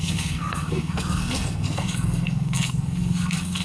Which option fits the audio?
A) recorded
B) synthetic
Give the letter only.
B